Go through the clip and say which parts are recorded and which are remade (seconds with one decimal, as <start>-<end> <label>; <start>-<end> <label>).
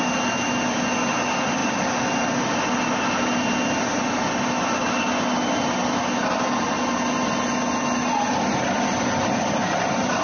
0.0-10.2 recorded